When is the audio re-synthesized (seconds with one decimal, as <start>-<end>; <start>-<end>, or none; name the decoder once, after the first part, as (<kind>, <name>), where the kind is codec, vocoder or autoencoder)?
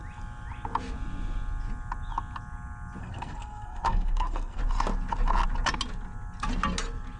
3.0-4.6 (codec, SNAC)